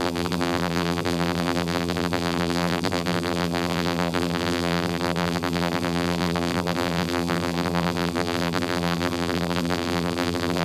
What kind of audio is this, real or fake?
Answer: fake